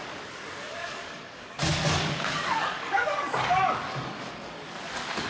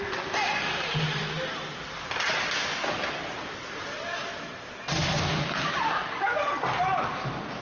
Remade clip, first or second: first